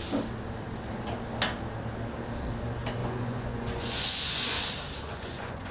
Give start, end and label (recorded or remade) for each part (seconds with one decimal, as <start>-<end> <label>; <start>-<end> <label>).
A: 0.0-3.0 recorded; 3.0-4.6 remade; 4.6-5.0 recorded; 5.0-5.7 remade